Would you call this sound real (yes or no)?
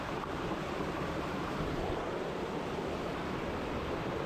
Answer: no